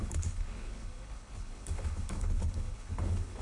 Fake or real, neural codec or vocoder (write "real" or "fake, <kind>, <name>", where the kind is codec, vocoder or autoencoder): fake, codec, HILCodec